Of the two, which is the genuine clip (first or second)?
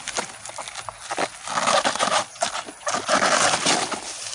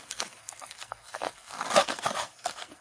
first